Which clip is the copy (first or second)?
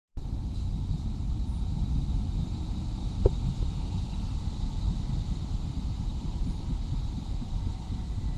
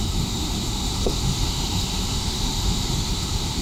second